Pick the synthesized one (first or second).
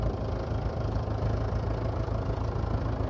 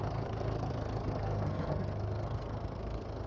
second